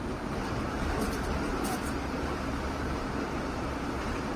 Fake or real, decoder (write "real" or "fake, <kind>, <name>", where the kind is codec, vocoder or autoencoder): fake, vocoder, BigVGAN v2